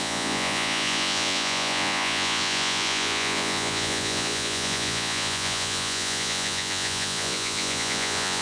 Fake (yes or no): yes